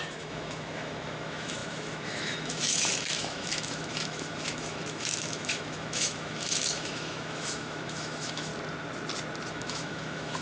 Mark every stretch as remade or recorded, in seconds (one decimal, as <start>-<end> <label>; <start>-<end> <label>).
0.0-8.5 remade; 8.5-9.5 recorded; 9.5-10.4 remade

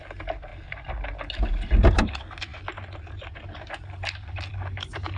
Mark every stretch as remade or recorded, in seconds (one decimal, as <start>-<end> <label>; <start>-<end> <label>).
0.0-4.5 recorded; 4.5-5.2 remade

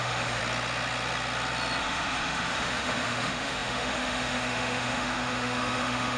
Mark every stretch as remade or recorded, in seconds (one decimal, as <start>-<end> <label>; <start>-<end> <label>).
0.0-0.4 remade; 0.4-1.8 recorded; 1.8-6.2 remade

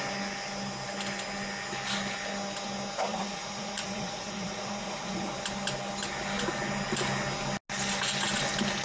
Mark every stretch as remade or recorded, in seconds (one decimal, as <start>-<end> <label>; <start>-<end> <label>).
0.0-3.1 recorded; 3.1-5.3 remade; 5.3-8.8 recorded